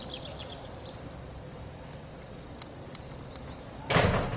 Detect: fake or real real